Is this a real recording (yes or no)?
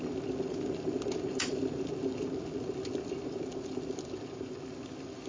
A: yes